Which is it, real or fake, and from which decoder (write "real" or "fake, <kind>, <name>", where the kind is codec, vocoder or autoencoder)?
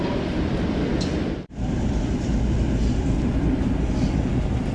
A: real